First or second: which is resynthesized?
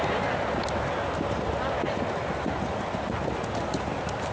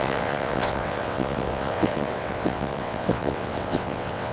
second